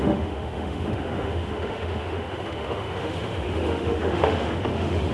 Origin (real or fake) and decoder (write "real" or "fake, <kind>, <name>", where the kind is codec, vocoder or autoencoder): fake, autoencoder, DAC-VAE